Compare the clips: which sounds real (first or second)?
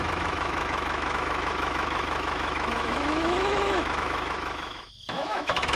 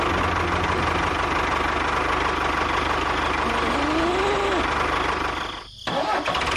second